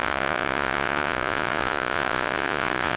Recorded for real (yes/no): no